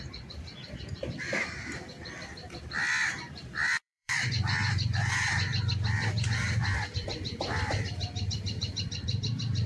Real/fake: fake